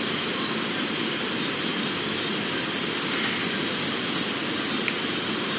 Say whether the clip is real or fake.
real